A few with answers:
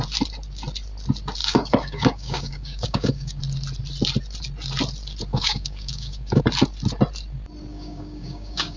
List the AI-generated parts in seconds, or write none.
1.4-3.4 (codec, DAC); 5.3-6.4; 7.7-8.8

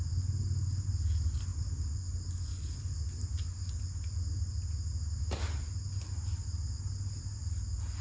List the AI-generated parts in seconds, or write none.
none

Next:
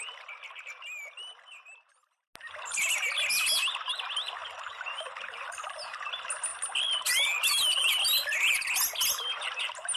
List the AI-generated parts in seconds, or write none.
6.5-7.9 (vocoder, BigVGAN v2)

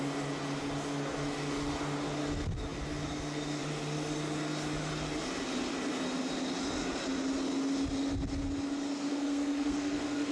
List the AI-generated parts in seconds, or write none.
9.1-10.3 (codec, SNAC)

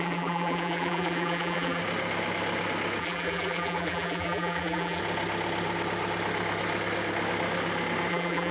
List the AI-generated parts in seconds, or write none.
0.0-1.8 (vocoder, BigVGAN v2); 3.0-5.0; 8.1-8.5

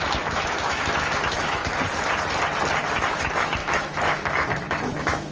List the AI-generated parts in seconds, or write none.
0.0-1.6 (autoencoder, DAC-VAE); 2.9-5.3